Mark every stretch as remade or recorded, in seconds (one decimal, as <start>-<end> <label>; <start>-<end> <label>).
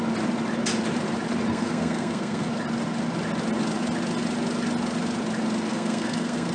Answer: 0.0-1.5 recorded; 1.5-2.5 remade; 2.5-5.7 recorded; 5.7-6.5 remade